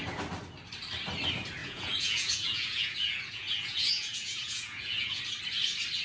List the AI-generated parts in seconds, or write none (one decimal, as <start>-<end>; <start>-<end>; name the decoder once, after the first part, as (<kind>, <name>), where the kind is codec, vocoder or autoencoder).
1.6-5.2 (vocoder, Vocos)